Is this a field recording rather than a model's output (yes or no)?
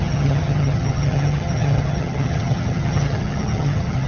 no